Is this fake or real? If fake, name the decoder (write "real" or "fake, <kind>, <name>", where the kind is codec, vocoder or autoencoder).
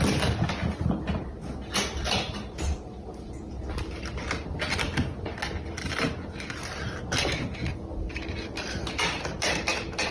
real